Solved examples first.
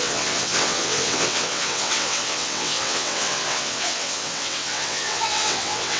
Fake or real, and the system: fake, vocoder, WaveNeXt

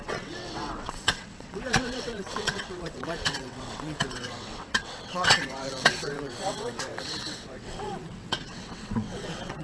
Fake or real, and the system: fake, vocoder, WaveNeXt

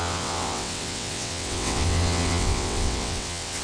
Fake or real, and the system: fake, vocoder, WaveNeXt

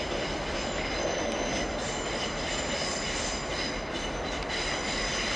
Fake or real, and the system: real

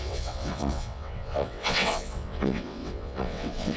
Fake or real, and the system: fake, vocoder, WaveNeXt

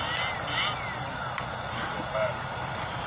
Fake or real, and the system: real